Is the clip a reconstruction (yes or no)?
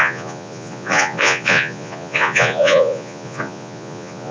yes